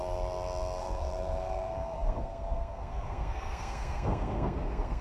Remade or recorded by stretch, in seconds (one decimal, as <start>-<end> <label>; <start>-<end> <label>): 0.0-0.8 recorded; 0.8-5.0 remade

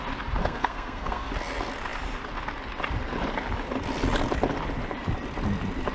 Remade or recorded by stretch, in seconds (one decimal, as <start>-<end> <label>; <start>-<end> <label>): 0.0-0.4 recorded; 0.4-1.3 remade; 1.3-5.9 recorded

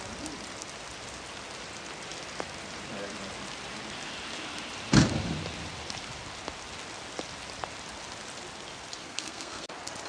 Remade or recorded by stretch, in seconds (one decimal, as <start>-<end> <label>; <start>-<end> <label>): 0.0-9.0 recorded; 9.0-9.7 remade; 9.7-10.1 recorded

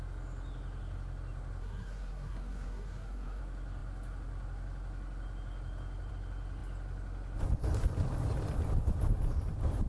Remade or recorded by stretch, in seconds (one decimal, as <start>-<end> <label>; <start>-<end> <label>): 0.0-1.6 recorded; 1.6-3.4 remade; 3.4-9.9 recorded

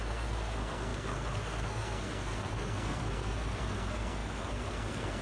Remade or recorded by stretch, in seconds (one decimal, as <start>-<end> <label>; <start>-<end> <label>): 0.0-5.2 remade

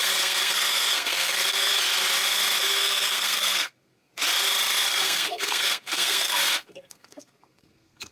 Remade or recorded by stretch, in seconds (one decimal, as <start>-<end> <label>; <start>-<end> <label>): 0.0-1.7 remade; 1.7-2.6 recorded; 2.6-4.1 remade; 4.1-4.9 recorded; 4.9-8.1 remade

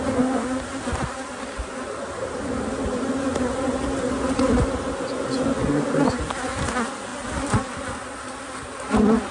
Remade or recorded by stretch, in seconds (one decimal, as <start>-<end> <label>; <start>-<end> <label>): 0.0-9.3 recorded